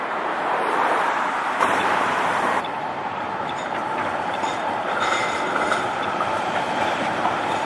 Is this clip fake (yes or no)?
yes